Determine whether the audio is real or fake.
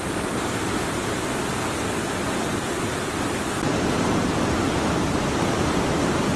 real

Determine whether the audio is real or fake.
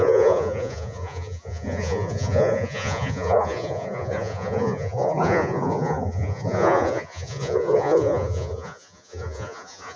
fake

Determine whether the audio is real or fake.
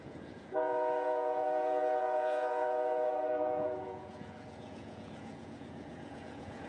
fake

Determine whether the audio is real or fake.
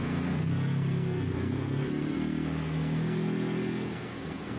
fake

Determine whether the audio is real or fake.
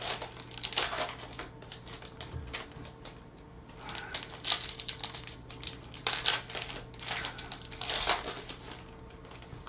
real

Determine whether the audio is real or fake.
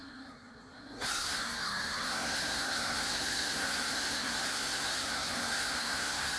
fake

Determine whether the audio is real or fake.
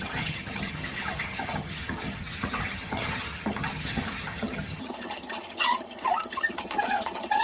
fake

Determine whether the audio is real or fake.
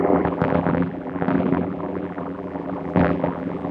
fake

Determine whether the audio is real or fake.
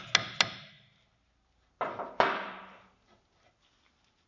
real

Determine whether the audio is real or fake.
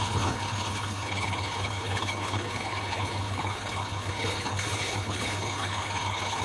fake